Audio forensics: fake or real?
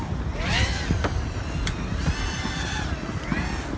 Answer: real